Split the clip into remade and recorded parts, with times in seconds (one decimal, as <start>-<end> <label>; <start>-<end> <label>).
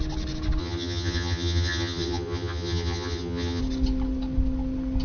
0.0-0.6 recorded; 0.6-3.6 remade; 3.6-5.0 recorded